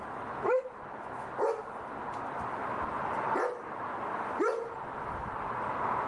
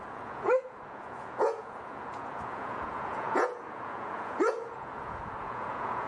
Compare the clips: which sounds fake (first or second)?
second